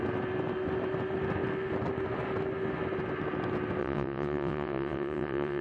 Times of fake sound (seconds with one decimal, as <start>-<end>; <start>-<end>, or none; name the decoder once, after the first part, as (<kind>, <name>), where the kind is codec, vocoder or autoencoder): 3.8-5.6 (vocoder, WaveNeXt)